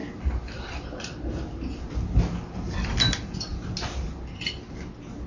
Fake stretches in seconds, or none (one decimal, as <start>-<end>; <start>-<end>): none